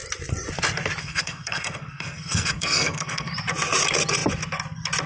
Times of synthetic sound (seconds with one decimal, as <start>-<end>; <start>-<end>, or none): 1.0-3.3